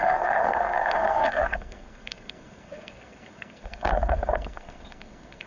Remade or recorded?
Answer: remade